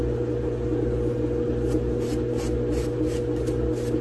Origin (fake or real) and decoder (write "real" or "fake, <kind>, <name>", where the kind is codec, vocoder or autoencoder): real